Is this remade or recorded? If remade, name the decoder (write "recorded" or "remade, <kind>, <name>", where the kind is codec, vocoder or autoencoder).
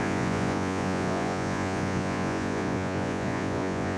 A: remade, vocoder, Vocos